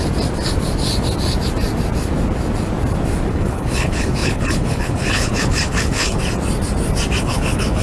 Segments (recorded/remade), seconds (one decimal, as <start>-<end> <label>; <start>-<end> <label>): 0.0-3.3 recorded; 3.3-6.2 remade; 6.2-7.2 recorded; 7.2-7.8 remade